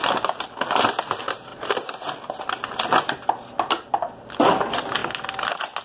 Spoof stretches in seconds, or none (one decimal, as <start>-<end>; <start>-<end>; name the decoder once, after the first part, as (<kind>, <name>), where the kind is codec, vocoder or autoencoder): none